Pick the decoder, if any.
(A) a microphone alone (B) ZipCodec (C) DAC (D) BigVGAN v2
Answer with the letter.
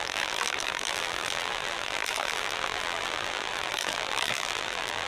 D